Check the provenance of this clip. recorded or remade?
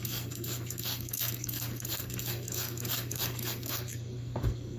remade